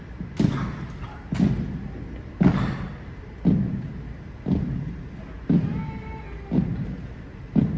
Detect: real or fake real